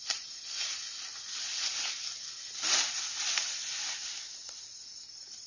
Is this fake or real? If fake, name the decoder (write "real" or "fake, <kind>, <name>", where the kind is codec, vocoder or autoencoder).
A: real